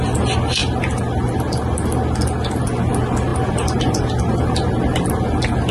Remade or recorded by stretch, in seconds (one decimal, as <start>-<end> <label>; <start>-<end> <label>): 0.0-5.7 recorded